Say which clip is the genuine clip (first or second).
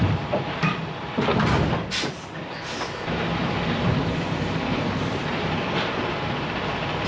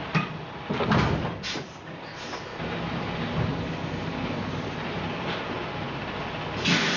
second